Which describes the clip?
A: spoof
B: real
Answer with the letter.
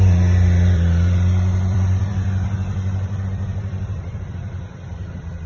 A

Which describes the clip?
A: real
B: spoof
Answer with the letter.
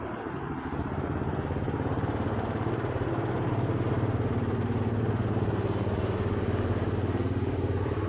B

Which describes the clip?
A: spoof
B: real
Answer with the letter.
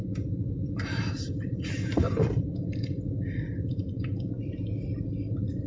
A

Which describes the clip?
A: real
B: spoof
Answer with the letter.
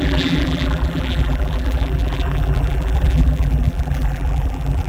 B